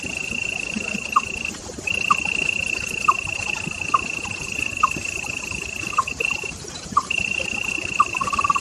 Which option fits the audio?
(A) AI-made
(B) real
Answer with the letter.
A